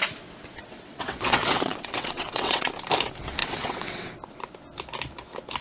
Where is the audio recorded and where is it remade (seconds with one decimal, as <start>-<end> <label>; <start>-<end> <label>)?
0.0-0.6 recorded; 0.6-2.7 remade; 2.7-3.4 recorded; 3.4-4.1 remade; 4.1-5.6 recorded